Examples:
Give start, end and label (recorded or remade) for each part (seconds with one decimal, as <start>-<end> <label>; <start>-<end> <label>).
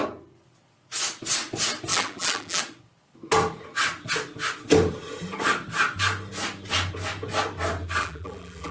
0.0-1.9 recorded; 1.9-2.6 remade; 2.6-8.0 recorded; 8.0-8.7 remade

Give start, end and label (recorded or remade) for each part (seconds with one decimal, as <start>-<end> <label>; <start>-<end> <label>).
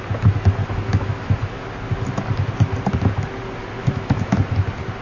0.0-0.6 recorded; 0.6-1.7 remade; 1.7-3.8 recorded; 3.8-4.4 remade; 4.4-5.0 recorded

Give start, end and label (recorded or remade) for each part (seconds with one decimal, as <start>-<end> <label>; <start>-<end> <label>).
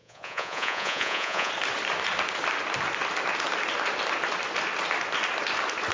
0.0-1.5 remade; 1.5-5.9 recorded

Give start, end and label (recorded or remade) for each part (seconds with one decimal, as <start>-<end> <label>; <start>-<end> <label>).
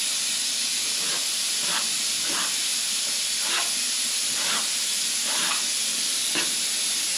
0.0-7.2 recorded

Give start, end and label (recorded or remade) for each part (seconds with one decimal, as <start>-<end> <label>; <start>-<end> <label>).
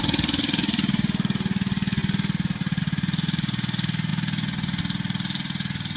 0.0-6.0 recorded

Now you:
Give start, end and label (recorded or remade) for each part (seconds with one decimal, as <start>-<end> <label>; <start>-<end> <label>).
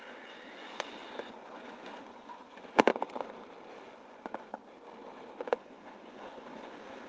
0.0-2.9 remade; 2.9-3.7 recorded; 3.7-4.6 remade; 4.6-5.5 recorded; 5.5-7.1 remade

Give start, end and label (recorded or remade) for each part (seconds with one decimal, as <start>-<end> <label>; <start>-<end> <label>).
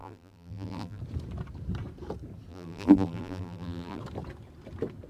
0.0-1.0 remade; 1.0-2.5 recorded; 2.5-4.0 remade; 4.0-5.1 recorded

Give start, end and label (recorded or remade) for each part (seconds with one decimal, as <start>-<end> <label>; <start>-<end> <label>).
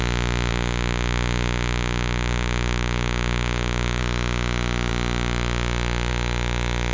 0.0-0.5 recorded; 0.5-4.0 remade; 4.0-6.9 recorded